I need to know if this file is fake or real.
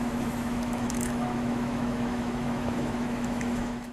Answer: fake